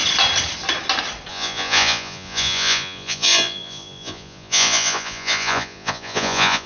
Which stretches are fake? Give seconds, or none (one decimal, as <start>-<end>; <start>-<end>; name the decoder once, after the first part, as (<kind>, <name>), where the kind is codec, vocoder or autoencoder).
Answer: 1.3-6.7 (vocoder, Vocos)